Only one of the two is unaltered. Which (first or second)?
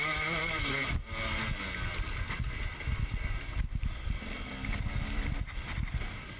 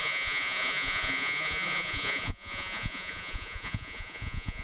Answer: first